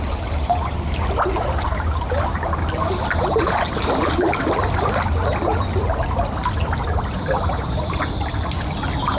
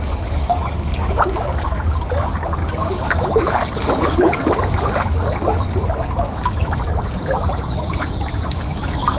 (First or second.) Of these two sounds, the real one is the first